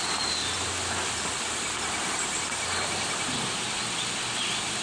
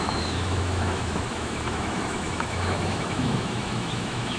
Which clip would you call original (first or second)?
first